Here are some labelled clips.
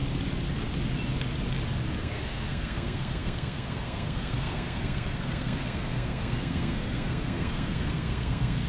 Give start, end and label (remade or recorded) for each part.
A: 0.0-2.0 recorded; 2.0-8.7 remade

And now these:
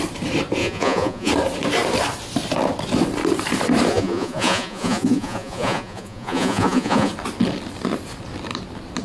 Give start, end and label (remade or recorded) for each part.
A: 0.0-0.6 recorded; 0.6-1.3 remade; 1.3-3.9 recorded; 3.9-7.1 remade; 7.1-9.0 recorded